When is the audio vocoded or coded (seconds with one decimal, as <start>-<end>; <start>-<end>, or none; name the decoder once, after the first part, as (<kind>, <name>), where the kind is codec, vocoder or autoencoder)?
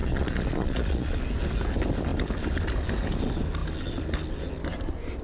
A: 0.0-1.2 (vocoder, Vocos)